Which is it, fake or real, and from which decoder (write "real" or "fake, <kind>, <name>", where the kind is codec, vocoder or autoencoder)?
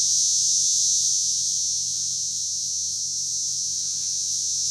fake, vocoder, Vocos